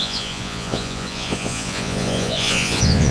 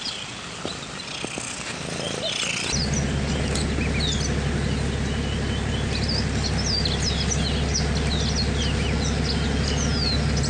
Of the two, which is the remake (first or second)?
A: first